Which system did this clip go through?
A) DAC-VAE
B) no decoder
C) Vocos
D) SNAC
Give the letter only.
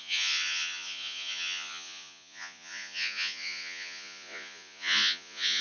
C